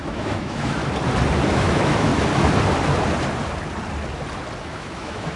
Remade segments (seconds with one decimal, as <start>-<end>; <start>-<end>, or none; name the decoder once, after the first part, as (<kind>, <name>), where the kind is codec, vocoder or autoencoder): 0.0-0.8 (autoencoder, DAC-VAE); 1.5-2.1; 4.6-5.4